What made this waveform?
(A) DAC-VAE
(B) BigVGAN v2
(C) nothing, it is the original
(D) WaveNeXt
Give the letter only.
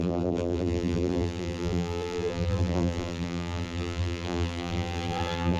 B